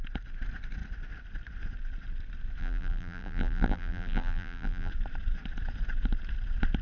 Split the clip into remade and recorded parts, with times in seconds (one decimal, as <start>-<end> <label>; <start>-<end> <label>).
0.0-2.6 recorded; 2.6-4.9 remade; 4.9-6.8 recorded